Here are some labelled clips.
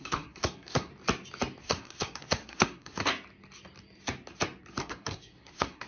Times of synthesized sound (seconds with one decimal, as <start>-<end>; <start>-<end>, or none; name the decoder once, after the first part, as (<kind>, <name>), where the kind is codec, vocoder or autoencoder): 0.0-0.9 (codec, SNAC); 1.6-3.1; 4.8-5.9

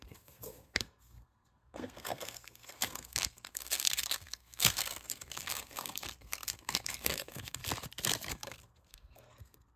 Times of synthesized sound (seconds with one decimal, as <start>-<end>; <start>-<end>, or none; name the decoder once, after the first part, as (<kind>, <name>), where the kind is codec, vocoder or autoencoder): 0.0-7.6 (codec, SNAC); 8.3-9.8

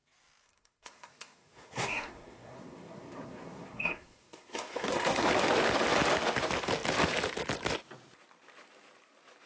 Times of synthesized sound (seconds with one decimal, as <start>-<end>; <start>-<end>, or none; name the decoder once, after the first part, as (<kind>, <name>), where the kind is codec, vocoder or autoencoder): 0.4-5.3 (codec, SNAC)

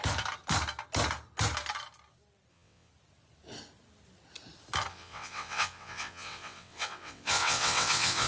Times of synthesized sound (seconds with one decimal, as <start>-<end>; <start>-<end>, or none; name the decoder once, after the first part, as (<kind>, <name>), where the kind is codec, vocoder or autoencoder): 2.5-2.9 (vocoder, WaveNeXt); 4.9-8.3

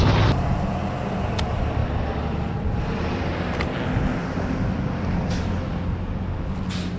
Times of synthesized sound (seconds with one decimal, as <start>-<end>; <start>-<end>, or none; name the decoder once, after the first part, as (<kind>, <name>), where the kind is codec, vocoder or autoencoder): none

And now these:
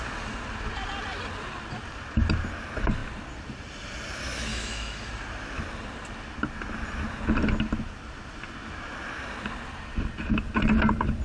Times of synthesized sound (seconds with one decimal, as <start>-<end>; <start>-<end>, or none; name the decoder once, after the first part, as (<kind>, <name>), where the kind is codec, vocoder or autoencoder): 4.5-5.1 (autoencoder, DAC-VAE)

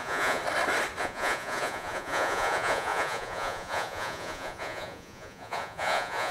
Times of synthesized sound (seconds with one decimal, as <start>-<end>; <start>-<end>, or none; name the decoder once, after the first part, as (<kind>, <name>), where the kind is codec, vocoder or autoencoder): 0.0-0.4 (vocoder, Vocos); 1.0-6.3

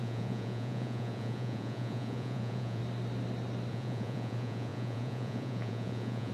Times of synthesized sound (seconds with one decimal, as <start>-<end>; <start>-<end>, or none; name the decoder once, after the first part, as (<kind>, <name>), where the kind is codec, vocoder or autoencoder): 0.0-2.8 (vocoder, Vocos); 3.7-6.3